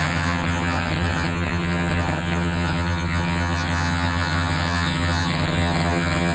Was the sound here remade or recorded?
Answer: remade